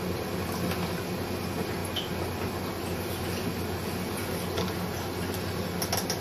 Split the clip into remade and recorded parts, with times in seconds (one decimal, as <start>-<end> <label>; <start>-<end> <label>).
0.0-6.2 recorded